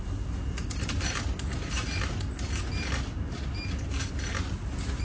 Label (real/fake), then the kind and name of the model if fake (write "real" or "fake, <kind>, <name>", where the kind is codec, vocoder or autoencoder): real